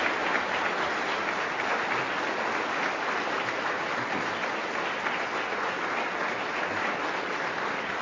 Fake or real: real